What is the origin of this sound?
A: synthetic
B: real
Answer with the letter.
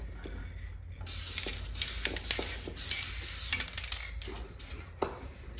B